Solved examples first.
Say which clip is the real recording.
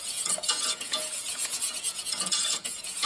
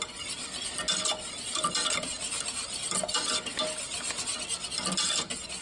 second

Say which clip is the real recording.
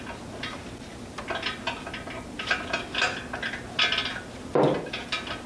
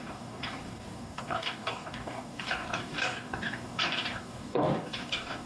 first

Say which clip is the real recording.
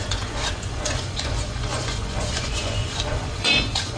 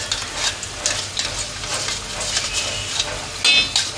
second